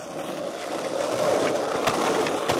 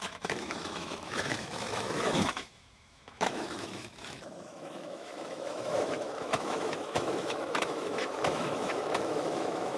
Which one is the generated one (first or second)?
second